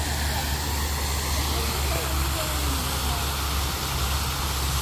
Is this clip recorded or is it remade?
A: recorded